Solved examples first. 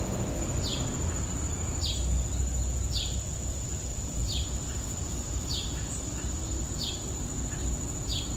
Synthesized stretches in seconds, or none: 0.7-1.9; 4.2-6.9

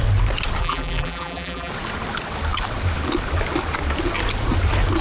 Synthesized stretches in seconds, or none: 0.6-1.7

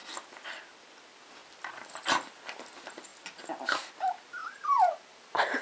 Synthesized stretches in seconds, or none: 4.4-5.6